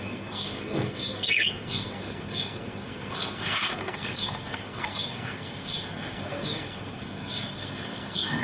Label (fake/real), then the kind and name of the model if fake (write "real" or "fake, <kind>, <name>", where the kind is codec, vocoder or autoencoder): fake, codec, SNAC